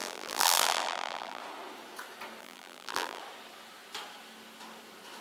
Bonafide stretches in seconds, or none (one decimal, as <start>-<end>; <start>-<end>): 1.4-2.4; 3.2-5.2